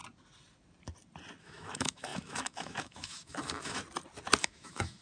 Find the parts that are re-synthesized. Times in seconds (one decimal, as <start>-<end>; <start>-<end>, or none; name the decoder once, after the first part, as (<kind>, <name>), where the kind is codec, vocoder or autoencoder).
1.4-3.8 (autoencoder, DAC-VAE); 4.4-5.0